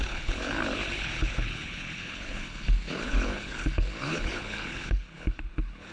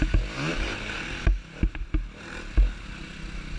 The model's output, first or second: first